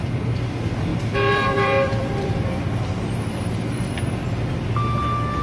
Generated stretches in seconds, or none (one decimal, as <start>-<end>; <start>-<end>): 0.9-4.0